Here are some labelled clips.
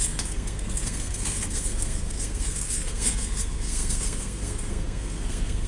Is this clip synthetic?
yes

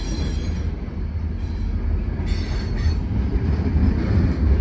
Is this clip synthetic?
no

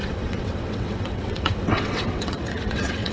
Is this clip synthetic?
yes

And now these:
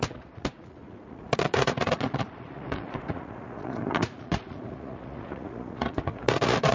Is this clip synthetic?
yes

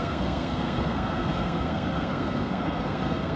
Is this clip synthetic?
yes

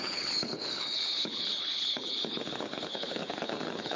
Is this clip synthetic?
yes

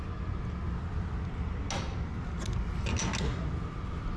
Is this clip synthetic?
no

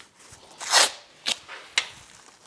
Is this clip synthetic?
no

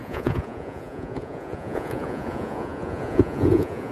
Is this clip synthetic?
yes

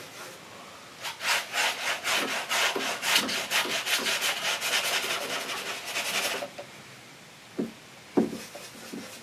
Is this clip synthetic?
no